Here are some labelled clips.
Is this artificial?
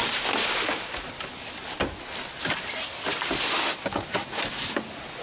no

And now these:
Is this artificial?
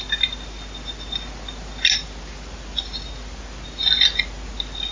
no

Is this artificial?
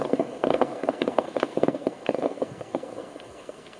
yes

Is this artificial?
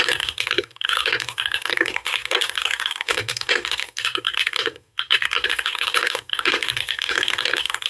yes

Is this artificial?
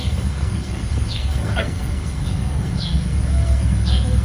yes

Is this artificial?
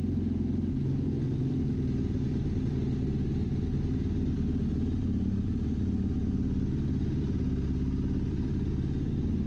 no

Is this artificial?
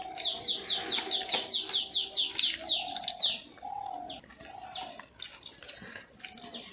no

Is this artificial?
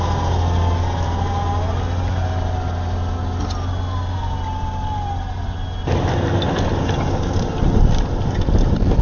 no